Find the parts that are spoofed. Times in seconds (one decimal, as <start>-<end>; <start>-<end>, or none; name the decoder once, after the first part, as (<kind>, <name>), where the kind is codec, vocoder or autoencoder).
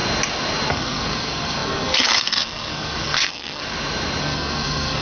0.7-3.6 (codec, SNAC); 4.2-5.0